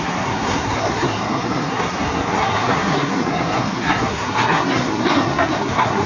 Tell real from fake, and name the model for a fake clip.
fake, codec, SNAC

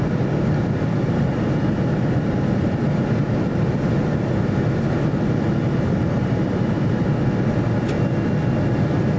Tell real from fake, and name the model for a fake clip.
real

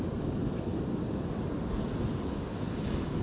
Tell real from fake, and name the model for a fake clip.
real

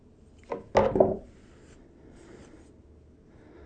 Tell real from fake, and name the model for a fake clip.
real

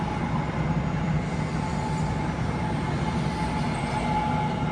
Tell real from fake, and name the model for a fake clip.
real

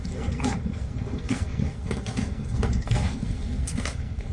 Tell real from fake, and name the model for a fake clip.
fake, codec, SNAC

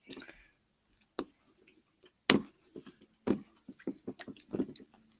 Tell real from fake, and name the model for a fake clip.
real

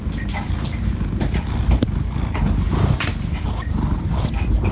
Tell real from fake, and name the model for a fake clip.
real